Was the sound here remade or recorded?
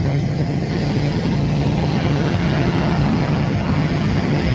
remade